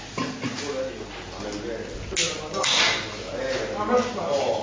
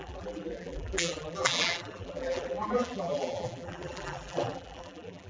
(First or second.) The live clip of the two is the first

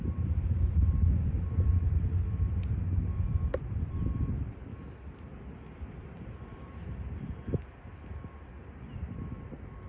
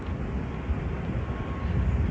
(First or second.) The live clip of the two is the second